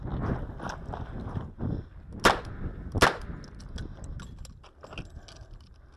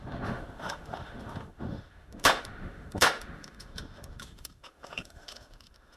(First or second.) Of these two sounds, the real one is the first